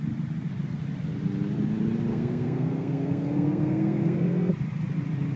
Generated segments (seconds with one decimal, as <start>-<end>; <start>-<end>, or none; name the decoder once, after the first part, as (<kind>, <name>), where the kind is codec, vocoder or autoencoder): 2.1-4.5 (codec, SNAC)